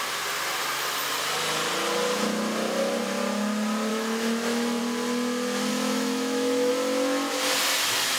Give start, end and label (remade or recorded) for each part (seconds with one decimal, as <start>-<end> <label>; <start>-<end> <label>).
0.0-3.9 recorded; 3.9-4.8 remade; 4.8-5.7 recorded; 5.7-6.7 remade; 6.7-8.2 recorded